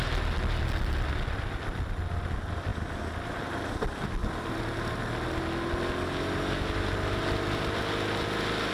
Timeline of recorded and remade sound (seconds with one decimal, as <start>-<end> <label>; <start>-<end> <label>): 0.0-8.7 recorded